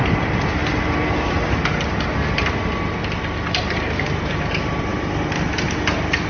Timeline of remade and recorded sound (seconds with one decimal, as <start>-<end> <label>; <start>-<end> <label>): 0.0-6.3 recorded